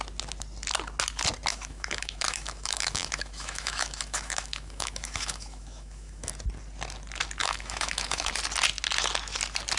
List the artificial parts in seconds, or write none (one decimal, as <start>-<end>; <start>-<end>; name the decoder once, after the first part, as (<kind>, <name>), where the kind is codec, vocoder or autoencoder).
1.5-6.3 (autoencoder, DAC-VAE); 7.4-8.3